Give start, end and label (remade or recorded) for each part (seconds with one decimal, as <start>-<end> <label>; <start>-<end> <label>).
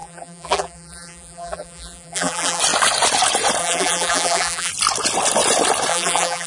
0.0-2.6 remade; 2.6-3.6 recorded; 3.6-4.7 remade; 4.7-5.9 recorded; 5.9-6.5 remade